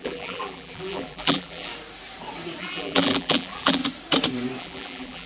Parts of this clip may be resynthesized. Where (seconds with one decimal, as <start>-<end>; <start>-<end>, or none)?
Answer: 0.0-1.7; 2.6-3.8; 4.6-5.3